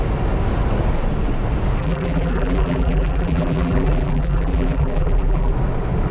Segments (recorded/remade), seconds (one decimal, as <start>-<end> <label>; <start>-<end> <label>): 0.0-1.8 recorded; 1.8-5.5 remade; 5.5-6.1 recorded